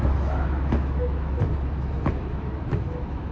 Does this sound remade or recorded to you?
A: remade